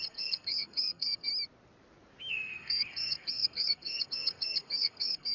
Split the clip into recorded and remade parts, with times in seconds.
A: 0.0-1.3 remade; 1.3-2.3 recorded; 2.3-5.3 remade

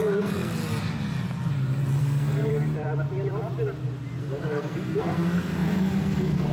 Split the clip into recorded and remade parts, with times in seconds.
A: 0.0-0.6 remade; 0.6-2.0 recorded; 2.0-2.5 remade; 2.5-4.2 recorded; 4.2-6.5 remade

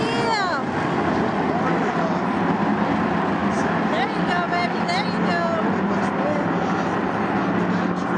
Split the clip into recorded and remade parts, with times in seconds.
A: 0.0-8.2 recorded

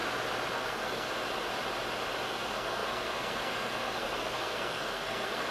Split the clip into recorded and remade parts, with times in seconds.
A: 0.0-0.5 recorded; 0.5-1.1 remade; 1.1-2.3 recorded; 2.3-5.5 remade

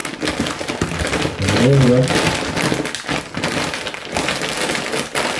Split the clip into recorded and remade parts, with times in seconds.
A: 0.0-5.4 recorded

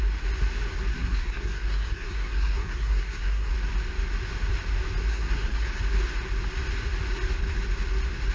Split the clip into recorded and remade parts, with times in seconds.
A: 0.0-0.9 recorded; 0.9-3.5 remade; 3.5-5.1 recorded; 5.1-5.8 remade; 5.8-8.3 recorded

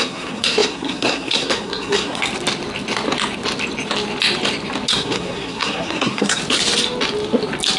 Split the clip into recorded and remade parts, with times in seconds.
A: 0.0-2.2 remade; 2.2-4.9 recorded; 4.9-6.4 remade; 6.4-7.8 recorded